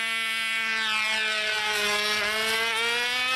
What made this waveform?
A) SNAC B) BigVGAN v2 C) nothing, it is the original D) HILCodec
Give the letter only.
C